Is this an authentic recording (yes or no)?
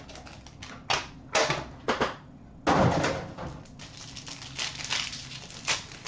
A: yes